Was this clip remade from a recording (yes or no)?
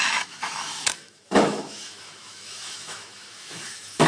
yes